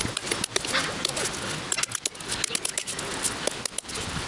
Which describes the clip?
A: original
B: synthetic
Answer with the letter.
A